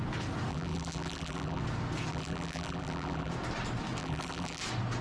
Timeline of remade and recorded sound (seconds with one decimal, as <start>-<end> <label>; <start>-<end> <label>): 0.0-0.5 recorded; 0.5-1.6 remade; 1.6-2.1 recorded; 2.1-3.3 remade; 3.3-4.0 recorded; 4.0-4.6 remade; 4.6-5.0 recorded